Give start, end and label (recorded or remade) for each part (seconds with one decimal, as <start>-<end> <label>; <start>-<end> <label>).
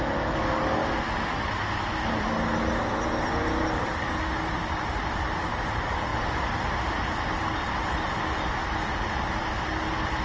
0.0-3.4 recorded; 3.4-5.1 remade; 5.1-10.2 recorded